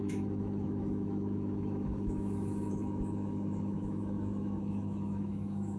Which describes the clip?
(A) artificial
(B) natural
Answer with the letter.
A